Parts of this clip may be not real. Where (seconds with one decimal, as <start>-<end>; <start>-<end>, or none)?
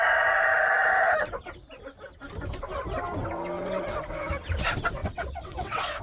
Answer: 5.0-6.0